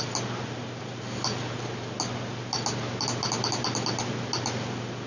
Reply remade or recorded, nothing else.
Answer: recorded